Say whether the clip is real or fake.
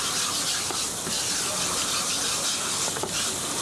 real